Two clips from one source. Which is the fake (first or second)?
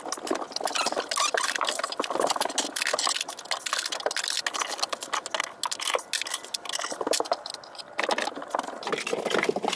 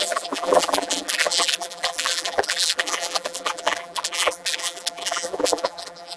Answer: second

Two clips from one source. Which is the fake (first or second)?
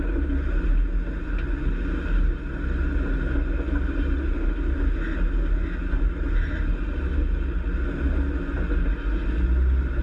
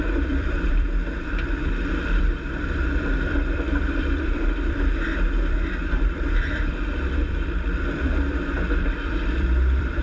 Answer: second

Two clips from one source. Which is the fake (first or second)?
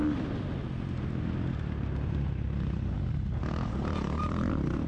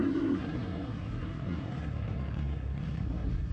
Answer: second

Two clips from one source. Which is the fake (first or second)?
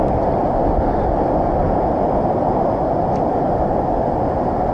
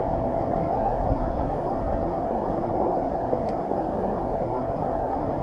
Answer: second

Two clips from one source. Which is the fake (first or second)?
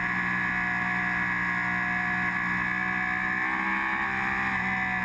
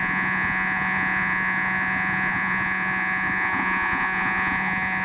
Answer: second